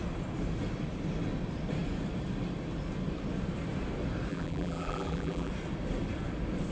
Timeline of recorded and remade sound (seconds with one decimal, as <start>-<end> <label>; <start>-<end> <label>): 0.0-4.3 recorded; 4.3-5.5 remade; 5.5-6.7 recorded